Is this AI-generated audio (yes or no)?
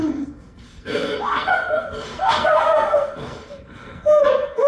yes